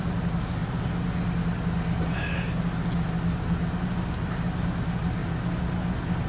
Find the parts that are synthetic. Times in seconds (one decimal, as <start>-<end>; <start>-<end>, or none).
none